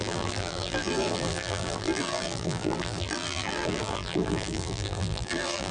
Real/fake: fake